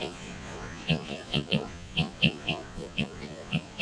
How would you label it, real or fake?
fake